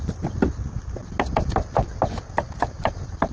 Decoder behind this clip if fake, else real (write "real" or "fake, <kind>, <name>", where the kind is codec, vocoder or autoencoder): real